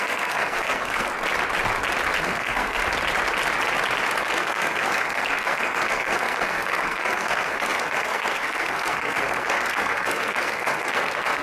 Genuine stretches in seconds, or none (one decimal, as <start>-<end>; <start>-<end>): 1.1-2.2; 2.8-4.2

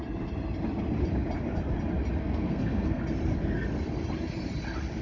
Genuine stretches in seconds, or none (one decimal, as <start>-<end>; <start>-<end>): 0.0-2.2; 3.0-5.0